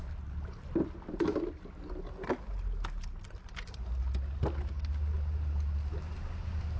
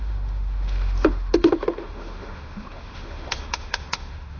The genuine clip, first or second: first